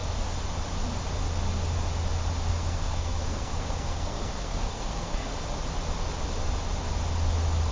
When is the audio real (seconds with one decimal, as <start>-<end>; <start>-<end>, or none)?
0.0-2.5; 5.3-7.7